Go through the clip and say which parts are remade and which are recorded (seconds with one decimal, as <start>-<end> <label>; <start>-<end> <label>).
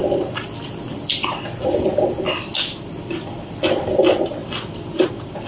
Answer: 0.0-4.4 recorded; 4.4-5.1 remade; 5.1-5.5 recorded